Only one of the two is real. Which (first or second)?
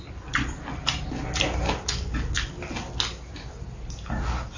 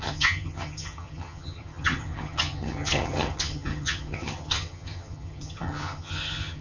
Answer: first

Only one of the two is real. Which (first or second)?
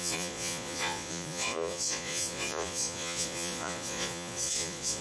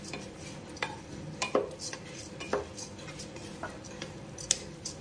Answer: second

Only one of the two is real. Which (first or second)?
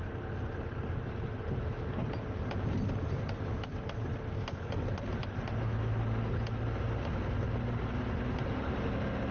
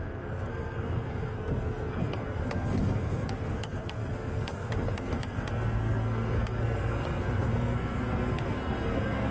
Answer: first